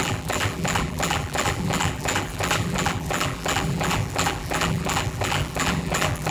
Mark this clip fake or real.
fake